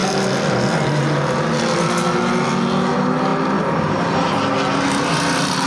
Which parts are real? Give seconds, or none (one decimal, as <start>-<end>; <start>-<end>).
0.0-5.7